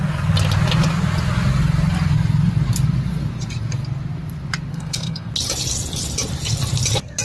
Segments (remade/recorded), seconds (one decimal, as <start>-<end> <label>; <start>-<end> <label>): 0.0-4.7 recorded; 4.7-5.3 remade; 5.3-7.2 recorded